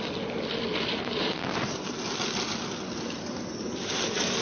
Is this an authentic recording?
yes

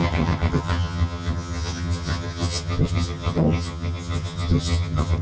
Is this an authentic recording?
no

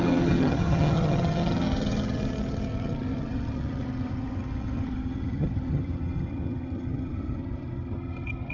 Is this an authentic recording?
no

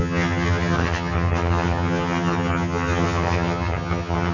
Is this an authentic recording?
no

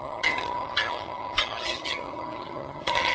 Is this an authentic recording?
no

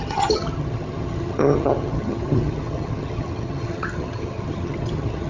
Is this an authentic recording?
no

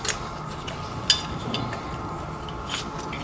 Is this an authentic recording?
yes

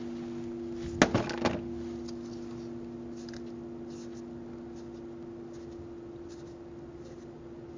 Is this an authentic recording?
yes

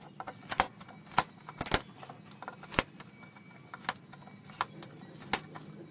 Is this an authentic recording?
yes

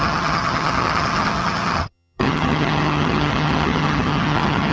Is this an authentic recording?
no